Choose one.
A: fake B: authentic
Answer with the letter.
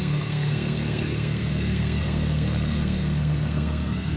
A